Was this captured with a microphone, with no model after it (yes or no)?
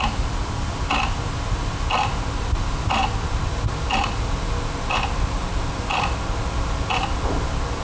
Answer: yes